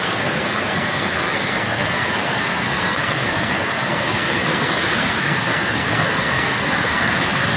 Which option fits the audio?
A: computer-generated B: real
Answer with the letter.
A